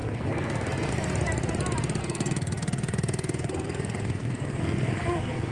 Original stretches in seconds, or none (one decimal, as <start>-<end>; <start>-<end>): 0.9-2.0